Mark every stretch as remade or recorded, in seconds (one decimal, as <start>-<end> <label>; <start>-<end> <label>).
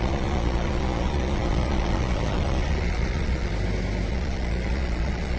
0.0-3.5 remade; 3.5-4.1 recorded; 4.1-5.4 remade